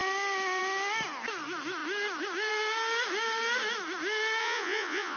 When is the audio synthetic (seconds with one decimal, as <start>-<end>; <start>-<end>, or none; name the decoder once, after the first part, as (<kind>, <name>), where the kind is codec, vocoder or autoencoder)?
4.4-5.2 (vocoder, Vocos)